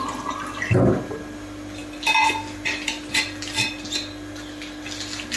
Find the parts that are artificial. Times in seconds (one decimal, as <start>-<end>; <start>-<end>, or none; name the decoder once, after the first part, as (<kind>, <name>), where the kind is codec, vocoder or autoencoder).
none

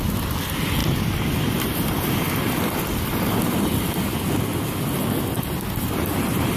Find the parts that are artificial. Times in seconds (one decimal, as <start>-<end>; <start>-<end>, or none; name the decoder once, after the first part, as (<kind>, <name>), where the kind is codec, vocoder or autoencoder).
none

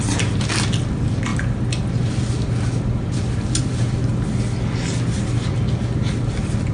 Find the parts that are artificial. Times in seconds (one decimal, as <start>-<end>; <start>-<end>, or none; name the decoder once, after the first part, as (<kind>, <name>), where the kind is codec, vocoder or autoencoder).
none

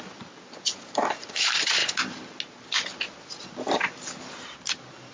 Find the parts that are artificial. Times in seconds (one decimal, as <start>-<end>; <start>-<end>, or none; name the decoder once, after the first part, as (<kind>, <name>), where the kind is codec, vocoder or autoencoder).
0.0-1.8 (vocoder, BigVGAN v2)